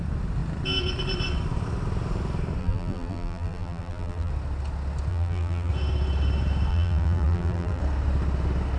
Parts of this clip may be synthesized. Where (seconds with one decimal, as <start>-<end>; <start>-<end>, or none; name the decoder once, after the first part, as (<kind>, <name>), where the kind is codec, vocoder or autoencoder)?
2.6-4.3 (vocoder, BigVGAN v2); 5.1-5.7; 6.7-7.8